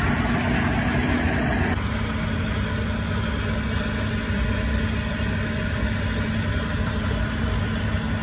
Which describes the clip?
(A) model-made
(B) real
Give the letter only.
B